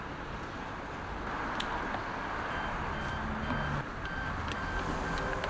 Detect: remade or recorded recorded